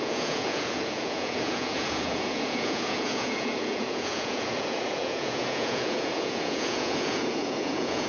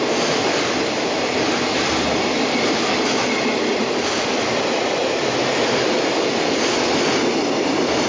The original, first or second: second